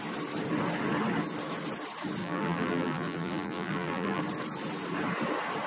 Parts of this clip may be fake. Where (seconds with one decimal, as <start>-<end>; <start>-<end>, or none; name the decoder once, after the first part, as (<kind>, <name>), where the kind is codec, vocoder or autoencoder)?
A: 2.2-4.2 (vocoder, BigVGAN v2)